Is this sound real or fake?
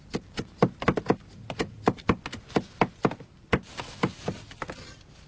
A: real